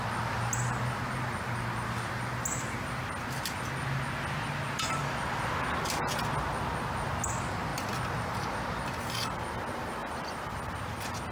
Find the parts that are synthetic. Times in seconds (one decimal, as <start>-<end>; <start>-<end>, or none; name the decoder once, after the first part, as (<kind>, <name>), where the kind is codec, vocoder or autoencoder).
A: 10.0-10.9 (vocoder, BigVGAN v2)